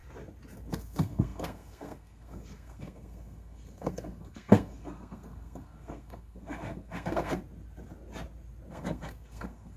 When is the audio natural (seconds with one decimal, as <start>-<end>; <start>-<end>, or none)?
0.0-0.7; 7.4-8.7